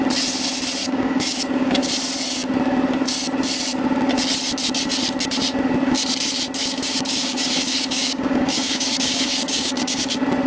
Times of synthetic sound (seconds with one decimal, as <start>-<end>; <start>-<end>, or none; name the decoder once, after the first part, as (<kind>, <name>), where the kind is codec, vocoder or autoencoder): 0.8-1.9 (codec, DAC); 6.6-10.1